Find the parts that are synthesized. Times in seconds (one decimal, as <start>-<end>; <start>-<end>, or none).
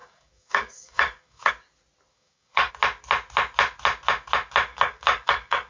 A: 0.0-1.5; 2.1-2.7; 4.7-5.7